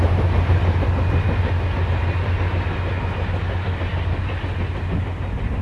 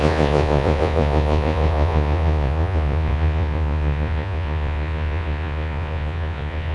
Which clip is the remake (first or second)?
second